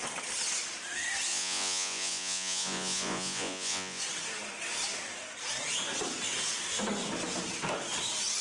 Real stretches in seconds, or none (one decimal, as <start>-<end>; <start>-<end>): 0.0-1.3; 4.0-8.4

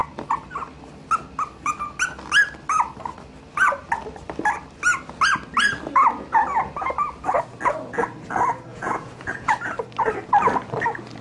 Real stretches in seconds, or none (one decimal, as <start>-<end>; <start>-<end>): 0.0-8.7; 9.5-11.2

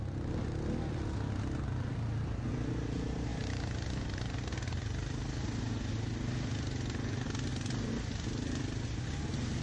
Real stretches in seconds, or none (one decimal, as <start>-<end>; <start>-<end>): 0.0-9.6

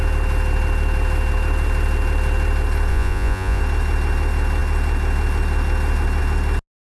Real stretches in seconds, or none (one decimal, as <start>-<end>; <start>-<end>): 0.0-2.9; 3.6-6.8